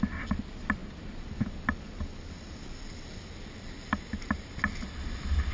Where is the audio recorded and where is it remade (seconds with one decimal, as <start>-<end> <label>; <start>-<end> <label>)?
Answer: 0.0-5.5 recorded